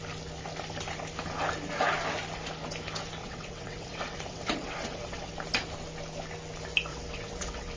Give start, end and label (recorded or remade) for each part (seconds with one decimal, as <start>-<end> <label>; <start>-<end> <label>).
0.0-3.2 recorded; 3.2-5.3 remade; 5.3-6.9 recorded; 6.9-7.8 remade